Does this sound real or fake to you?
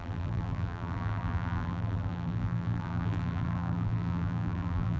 fake